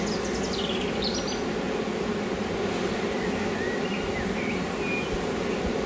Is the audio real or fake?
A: real